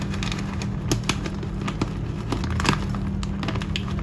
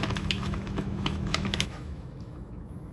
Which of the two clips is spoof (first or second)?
second